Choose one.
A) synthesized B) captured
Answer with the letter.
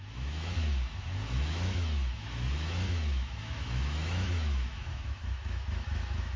A